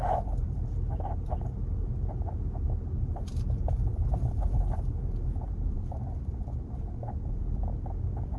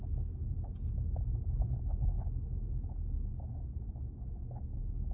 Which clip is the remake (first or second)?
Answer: first